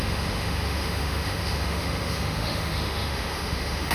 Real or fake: fake